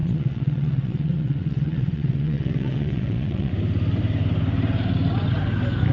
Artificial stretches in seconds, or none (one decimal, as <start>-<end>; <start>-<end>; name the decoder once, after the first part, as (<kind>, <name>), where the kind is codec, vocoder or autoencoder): 0.0-3.5 (vocoder, WaveNeXt)